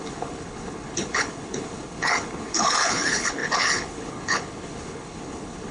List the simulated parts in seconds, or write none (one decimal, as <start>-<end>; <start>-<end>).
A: 0.0-5.7